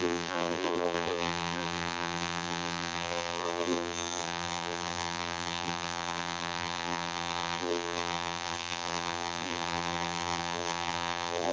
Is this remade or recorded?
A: remade